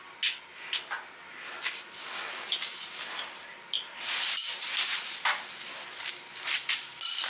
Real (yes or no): yes